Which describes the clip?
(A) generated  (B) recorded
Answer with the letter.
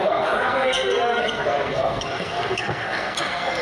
A